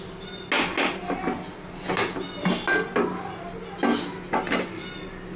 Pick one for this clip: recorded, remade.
recorded